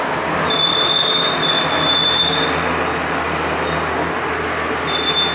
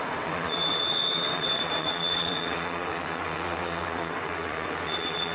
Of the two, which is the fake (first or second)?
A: second